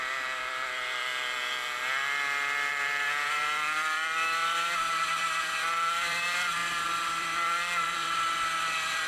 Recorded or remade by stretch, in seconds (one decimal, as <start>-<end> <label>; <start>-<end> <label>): 0.0-1.1 remade; 1.1-2.7 recorded; 2.7-6.6 remade; 6.6-7.2 recorded; 7.2-9.1 remade